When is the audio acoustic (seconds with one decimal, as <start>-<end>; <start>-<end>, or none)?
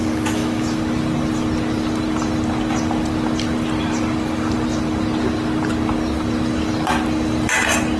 0.8-8.0